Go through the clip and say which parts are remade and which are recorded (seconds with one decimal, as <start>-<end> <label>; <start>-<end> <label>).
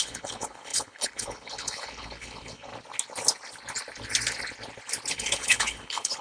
0.0-2.7 remade; 2.7-5.1 recorded; 5.1-6.2 remade